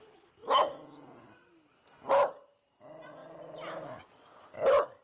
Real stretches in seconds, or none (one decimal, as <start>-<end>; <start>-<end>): 0.0-5.0